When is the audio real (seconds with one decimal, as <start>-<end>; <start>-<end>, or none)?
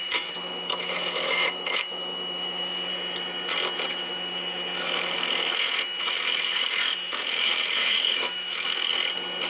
2.9-3.9; 8.9-9.5